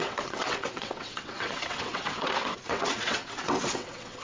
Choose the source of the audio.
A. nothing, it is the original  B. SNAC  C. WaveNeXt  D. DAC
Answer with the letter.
C